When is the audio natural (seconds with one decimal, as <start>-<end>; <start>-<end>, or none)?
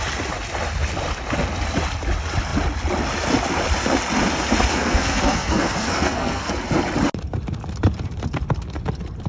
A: 0.0-4.8; 6.5-9.3